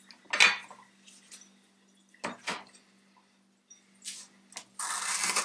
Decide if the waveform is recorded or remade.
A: recorded